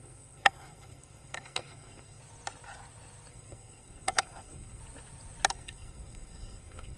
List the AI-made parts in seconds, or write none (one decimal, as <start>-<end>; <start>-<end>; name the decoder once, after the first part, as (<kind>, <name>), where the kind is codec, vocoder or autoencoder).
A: 0.0-2.2 (codec, SNAC); 3.3-4.8; 5.5-7.0